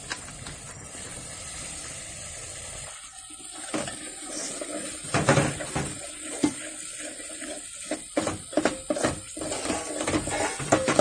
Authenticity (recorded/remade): recorded